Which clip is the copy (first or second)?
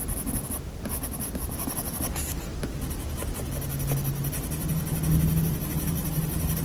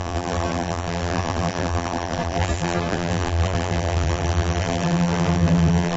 second